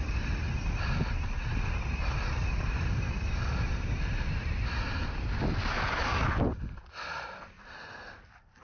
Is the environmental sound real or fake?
real